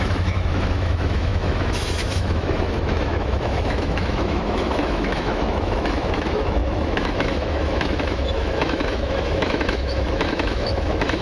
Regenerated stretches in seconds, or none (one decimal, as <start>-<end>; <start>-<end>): 0.0-11.2